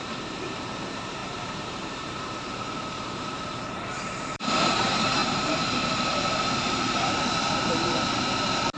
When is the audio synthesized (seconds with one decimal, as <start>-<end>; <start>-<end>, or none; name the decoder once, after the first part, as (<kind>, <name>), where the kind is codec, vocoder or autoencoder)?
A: 0.0-8.8 (vocoder, BigVGAN v2)